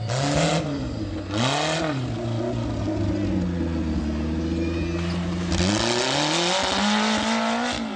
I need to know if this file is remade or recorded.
recorded